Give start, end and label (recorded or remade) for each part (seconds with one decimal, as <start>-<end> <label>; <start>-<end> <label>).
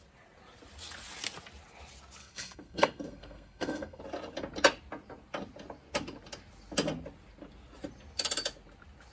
0.0-2.2 recorded; 2.2-4.0 remade; 4.0-9.1 recorded